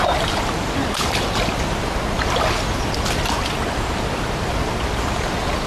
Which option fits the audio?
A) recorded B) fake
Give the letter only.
A